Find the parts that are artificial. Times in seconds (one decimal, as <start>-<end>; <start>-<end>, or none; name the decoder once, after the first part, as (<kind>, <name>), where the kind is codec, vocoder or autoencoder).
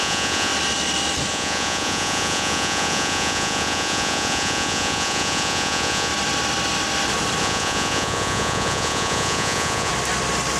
0.0-0.5 (vocoder, Vocos); 1.3-6.1; 7.4-9.9